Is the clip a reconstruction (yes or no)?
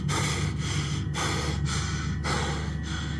no